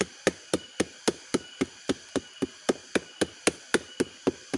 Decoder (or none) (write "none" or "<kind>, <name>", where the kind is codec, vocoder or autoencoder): none